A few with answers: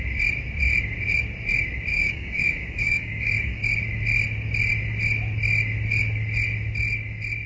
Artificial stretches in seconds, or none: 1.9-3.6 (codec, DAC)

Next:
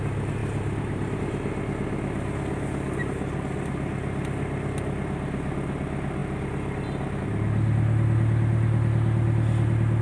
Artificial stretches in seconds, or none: 0.4-1.2 (vocoder, BigVGAN v2)

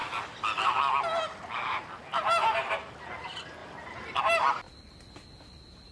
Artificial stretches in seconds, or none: 0.0-0.9 (vocoder, BigVGAN v2); 2.1-2.7; 3.6-4.2

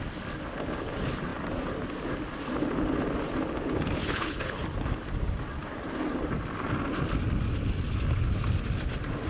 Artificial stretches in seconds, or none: 4.0-4.6 (codec, HILCodec)

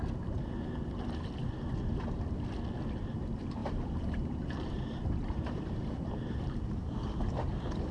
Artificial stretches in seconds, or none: 3.6-7.0 (vocoder, BigVGAN v2)